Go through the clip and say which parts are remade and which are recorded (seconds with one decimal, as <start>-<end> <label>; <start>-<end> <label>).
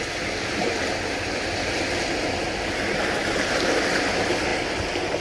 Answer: 0.0-5.2 recorded